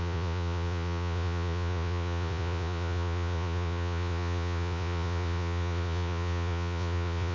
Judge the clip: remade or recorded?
remade